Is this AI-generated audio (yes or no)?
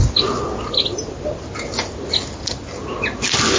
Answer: no